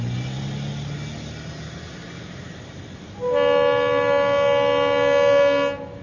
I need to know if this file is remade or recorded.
recorded